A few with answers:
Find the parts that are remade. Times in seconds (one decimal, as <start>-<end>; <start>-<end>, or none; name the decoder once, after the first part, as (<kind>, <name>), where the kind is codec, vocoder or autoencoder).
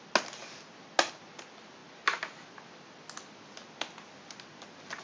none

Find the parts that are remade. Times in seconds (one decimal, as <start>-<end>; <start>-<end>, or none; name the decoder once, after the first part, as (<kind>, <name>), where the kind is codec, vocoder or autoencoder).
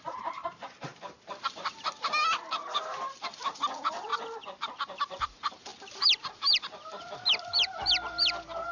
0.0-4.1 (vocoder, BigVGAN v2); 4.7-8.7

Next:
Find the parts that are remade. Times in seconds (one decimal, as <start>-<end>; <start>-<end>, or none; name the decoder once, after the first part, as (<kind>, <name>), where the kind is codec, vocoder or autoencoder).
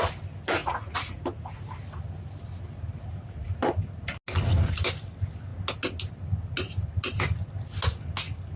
0.6-1.2 (vocoder, Vocos)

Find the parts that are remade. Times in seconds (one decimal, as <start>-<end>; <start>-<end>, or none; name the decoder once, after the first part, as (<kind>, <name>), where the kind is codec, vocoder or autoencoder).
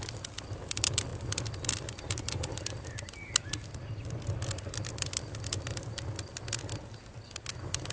none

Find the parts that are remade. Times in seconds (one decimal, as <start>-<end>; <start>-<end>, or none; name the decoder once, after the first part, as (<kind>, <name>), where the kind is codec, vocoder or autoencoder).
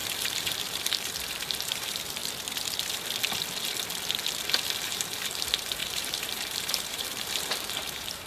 0.0-2.2 (vocoder, BigVGAN v2); 4.8-8.3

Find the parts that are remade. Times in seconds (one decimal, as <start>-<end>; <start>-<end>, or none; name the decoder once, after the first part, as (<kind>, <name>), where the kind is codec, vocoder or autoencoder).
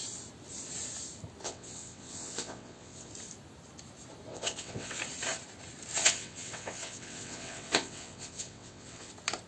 1.4-3.1 (vocoder, WaveNeXt); 4.3-5.0; 6.0-9.1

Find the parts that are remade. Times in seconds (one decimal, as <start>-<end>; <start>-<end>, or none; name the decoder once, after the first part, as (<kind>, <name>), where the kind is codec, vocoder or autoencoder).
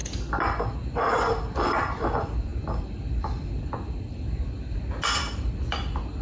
none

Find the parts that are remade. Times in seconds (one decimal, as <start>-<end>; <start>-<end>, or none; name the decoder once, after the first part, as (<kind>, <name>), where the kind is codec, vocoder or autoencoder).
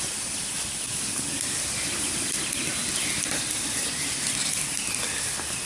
none